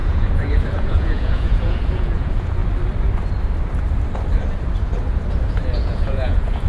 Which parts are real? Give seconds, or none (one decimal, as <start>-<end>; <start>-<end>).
2.6-5.6